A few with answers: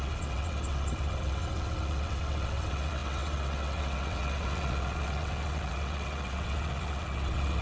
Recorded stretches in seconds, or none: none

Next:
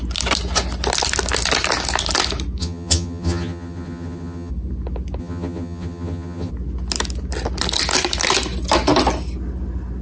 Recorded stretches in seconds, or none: 0.0-2.6; 4.5-5.2; 6.5-10.0

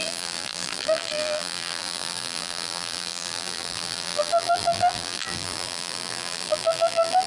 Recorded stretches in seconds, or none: none

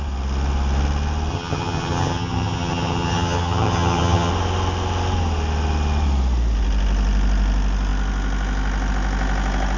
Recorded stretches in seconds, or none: 0.0-1.3; 4.3-9.8

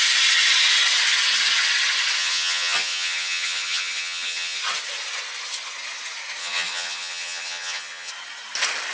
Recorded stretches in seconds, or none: 0.0-2.2; 4.6-6.4; 8.1-8.9

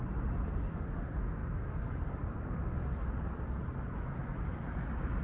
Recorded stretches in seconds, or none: 0.0-5.2

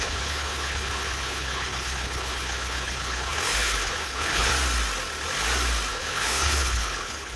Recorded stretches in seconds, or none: 4.5-5.9